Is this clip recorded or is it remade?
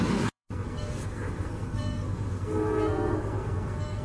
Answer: remade